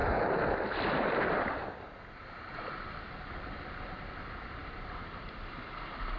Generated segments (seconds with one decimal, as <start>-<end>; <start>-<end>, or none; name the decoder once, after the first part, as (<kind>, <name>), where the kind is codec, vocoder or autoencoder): none